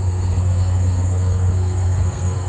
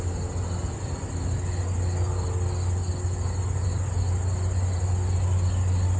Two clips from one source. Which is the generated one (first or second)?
first